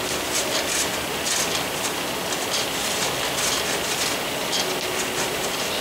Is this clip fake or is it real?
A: real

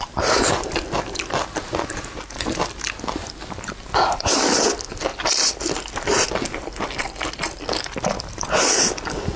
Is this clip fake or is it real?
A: real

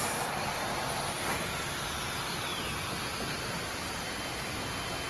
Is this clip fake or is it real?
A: real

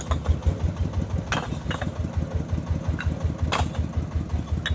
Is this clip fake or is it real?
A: real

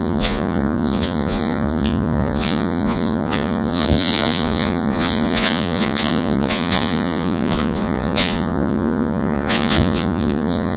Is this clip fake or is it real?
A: fake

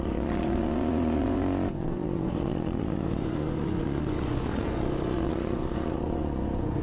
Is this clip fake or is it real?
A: fake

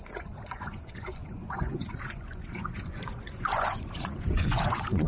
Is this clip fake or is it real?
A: fake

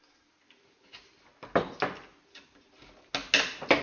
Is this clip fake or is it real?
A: real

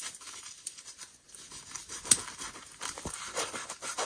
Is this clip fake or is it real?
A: real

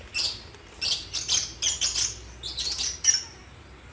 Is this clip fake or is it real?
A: real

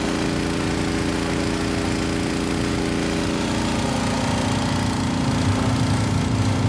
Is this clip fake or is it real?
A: real